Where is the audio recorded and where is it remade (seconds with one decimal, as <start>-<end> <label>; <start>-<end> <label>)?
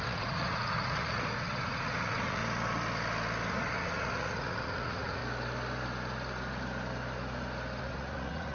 0.0-2.4 remade; 2.4-3.5 recorded; 3.5-5.2 remade; 5.2-7.8 recorded; 7.8-8.5 remade